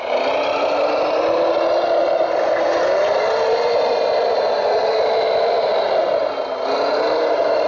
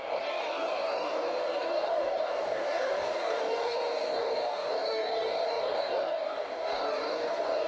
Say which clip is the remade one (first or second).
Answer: second